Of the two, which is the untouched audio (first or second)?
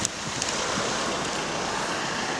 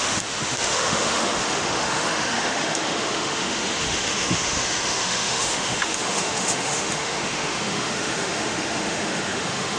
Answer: first